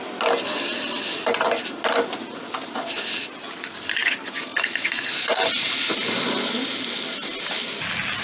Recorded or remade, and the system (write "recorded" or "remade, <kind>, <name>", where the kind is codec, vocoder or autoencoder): recorded